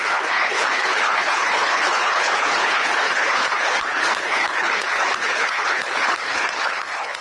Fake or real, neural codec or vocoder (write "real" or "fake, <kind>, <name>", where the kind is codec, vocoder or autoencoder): fake, codec, HILCodec